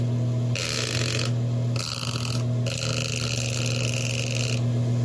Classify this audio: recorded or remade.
recorded